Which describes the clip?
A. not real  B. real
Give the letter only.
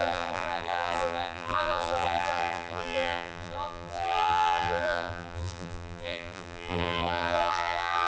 A